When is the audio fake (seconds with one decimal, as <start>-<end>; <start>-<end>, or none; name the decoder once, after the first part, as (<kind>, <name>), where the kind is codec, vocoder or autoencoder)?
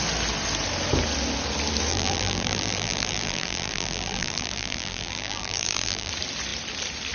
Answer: 1.9-6.1 (vocoder, BigVGAN v2)